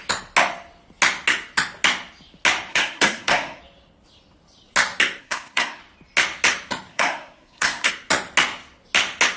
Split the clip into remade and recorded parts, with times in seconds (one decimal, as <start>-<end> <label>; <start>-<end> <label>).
0.0-2.7 recorded; 2.7-3.6 remade; 3.6-5.2 recorded; 5.2-5.8 remade; 5.8-6.9 recorded; 6.9-7.9 remade; 7.9-9.4 recorded